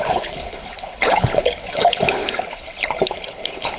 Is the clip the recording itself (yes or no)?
no